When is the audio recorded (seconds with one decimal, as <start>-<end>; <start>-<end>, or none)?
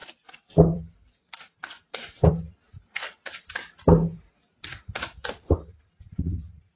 2.3-5.1; 6.1-6.8